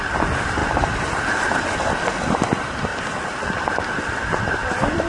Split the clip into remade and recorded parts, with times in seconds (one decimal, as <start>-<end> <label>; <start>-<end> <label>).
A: 0.0-2.9 remade; 2.9-4.4 recorded; 4.4-5.1 remade